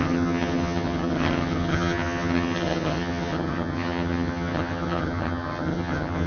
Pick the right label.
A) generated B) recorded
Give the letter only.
A